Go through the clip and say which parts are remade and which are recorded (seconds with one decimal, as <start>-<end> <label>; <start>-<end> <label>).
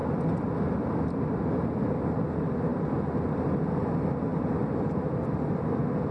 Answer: 0.0-6.1 recorded